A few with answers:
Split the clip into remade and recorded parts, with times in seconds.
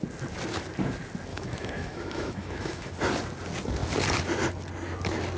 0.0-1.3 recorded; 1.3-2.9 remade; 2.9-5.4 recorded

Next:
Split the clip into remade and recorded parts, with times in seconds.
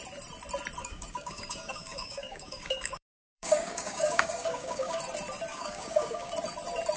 0.0-0.8 recorded; 0.8-5.0 remade; 5.0-5.5 recorded; 5.5-6.3 remade; 6.3-7.0 recorded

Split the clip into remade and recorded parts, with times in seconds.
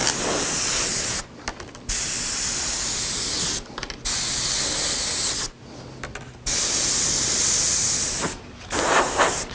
0.0-9.5 recorded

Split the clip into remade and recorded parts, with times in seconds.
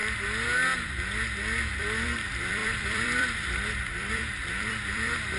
0.0-1.8 recorded; 1.8-5.4 remade